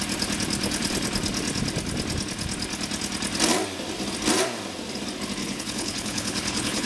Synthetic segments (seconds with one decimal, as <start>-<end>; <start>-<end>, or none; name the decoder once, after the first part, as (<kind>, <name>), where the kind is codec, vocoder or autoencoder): 5.4-6.9 (codec, HILCodec)